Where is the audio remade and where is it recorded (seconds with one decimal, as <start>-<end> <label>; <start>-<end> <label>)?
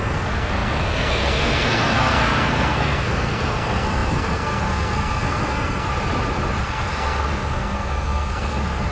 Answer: 0.0-5.9 remade; 5.9-6.6 recorded; 6.6-8.9 remade